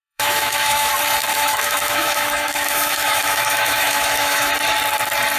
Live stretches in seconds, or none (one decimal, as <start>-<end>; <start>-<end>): 0.9-1.3; 4.5-5.4